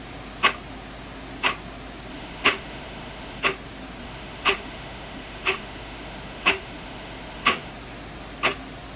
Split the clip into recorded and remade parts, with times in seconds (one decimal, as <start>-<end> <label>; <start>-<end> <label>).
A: 0.0-2.1 recorded; 2.1-3.4 remade; 3.4-4.0 recorded; 4.0-7.7 remade; 7.7-9.0 recorded